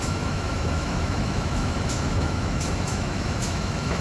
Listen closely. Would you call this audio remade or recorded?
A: remade